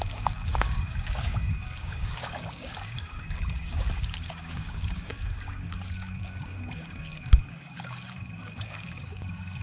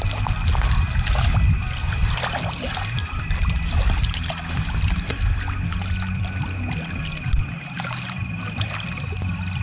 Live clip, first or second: second